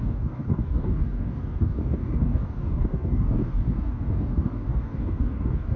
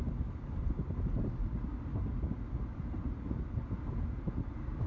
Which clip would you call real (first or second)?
second